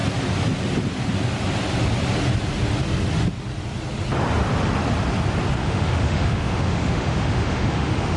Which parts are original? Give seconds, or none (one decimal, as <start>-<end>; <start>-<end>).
0.0-5.6